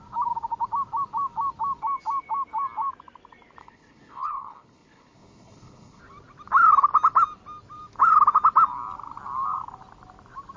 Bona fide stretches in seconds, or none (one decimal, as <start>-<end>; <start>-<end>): 0.0-3.6; 6.0-10.6